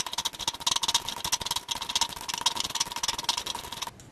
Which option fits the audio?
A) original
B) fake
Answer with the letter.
A